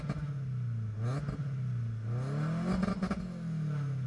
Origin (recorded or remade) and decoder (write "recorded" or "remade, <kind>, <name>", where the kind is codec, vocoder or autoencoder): recorded